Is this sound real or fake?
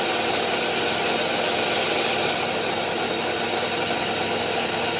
real